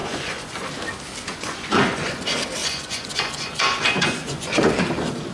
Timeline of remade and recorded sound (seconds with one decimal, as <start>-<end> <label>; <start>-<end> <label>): 0.0-0.7 remade; 0.7-1.3 recorded; 1.3-2.2 remade; 2.2-2.6 recorded; 2.6-4.7 remade; 4.7-5.3 recorded